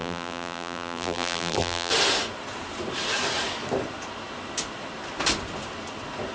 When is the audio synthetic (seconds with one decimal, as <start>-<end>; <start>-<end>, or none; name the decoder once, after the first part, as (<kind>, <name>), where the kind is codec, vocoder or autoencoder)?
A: 0.0-1.9 (vocoder, BigVGAN v2)

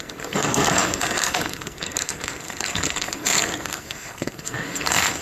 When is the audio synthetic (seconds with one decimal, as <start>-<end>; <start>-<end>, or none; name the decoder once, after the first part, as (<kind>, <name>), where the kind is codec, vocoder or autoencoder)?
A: 0.0-5.2 (codec, SNAC)

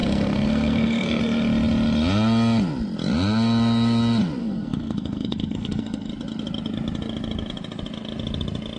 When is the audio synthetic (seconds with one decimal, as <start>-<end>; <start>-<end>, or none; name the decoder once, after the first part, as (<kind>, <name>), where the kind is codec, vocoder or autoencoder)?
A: 0.0-1.2 (codec, SNAC); 4.4-6.1

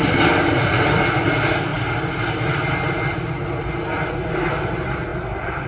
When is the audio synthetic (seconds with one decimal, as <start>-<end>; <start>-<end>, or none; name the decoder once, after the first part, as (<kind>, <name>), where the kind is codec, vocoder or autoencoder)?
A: 5.1-5.7 (vocoder, BigVGAN v2)

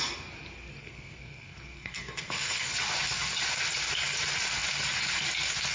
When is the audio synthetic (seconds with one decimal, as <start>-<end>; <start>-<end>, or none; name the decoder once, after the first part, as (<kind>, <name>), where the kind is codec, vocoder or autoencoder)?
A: 0.8-2.7 (codec, SNAC)

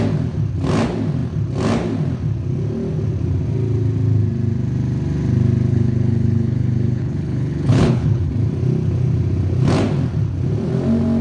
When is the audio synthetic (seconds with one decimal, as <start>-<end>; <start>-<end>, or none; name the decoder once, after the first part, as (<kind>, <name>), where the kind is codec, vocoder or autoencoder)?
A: 5.7-8.3 (codec, HILCodec)

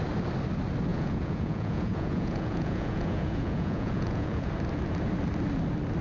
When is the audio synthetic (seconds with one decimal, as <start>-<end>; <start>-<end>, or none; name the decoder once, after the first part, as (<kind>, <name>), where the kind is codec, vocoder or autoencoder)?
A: 0.9-4.5 (vocoder, Vocos)